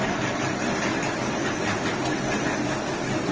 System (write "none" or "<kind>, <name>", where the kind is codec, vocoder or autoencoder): none